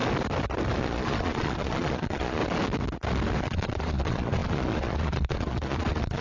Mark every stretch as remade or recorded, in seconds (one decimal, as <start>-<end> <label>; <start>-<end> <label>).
0.0-0.8 recorded; 0.8-2.4 remade; 2.4-3.4 recorded; 3.4-6.2 remade